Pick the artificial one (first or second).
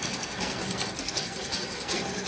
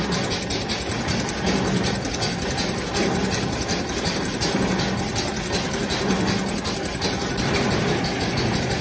first